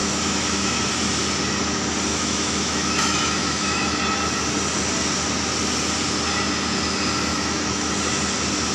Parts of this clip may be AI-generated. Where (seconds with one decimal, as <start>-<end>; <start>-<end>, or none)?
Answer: 0.0-0.9; 2.1-4.0; 7.3-7.9